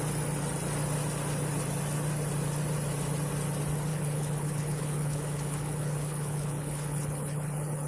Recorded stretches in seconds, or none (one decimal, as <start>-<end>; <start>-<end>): 0.0-3.9